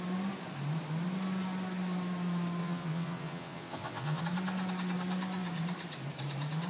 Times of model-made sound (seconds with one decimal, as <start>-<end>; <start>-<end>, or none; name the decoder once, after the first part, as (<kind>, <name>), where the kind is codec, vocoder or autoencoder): 2.6-4.2 (vocoder, WaveNeXt)